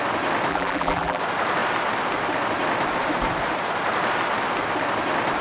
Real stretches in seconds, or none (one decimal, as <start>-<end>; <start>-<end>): 0.0-0.5; 1.2-5.4